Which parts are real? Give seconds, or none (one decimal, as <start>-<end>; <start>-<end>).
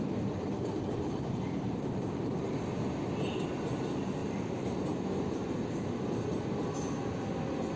0.0-7.8